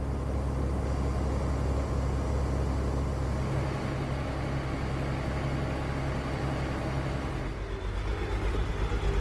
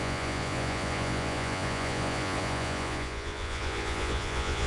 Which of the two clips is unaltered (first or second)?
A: first